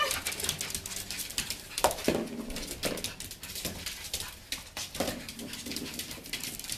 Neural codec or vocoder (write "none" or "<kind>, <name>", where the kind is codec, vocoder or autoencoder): none